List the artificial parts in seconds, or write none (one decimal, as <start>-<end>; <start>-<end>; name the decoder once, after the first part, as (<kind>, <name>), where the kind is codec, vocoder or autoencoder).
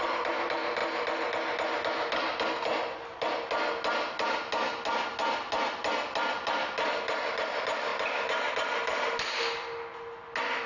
none